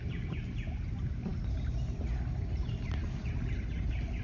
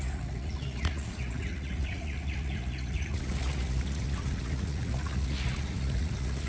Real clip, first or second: first